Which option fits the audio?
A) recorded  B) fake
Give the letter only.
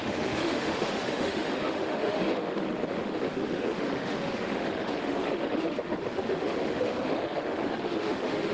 B